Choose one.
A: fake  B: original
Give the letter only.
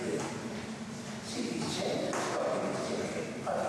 A